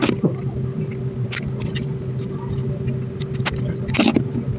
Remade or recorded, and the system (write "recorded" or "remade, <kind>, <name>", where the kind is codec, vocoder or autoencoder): recorded